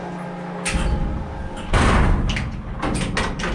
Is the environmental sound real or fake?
real